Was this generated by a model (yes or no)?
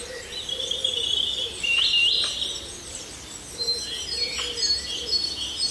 no